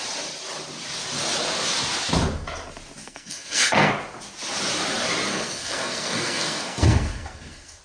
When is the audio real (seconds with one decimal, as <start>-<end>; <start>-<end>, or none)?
0.0-3.0; 3.9-5.3